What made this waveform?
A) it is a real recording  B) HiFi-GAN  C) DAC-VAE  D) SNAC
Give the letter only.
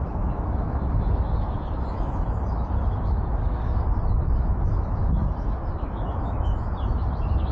C